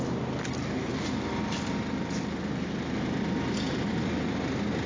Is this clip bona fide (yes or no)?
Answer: yes